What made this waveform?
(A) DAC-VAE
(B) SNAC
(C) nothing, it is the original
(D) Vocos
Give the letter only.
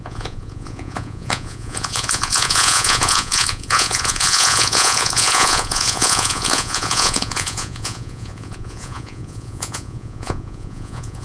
D